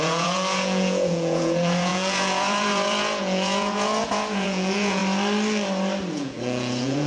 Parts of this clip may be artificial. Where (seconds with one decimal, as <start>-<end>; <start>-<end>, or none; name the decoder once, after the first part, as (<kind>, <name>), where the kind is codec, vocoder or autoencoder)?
0.0-5.0 (vocoder, Vocos); 6.1-7.1